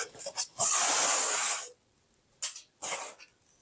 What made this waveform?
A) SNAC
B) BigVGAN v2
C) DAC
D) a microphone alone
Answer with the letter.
D